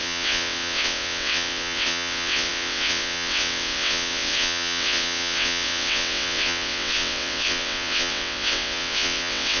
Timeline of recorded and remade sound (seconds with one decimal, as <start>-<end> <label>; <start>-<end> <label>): 0.0-9.6 remade